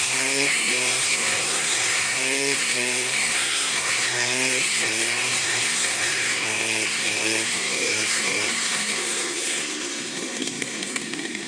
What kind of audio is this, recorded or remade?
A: remade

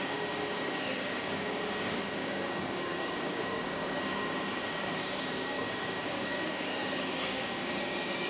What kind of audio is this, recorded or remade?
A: remade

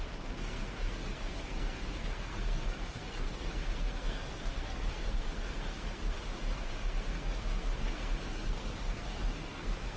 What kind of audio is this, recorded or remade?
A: remade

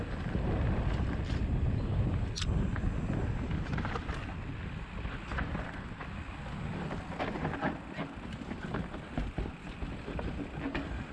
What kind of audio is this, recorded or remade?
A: recorded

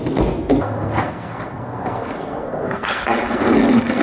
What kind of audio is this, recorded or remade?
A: remade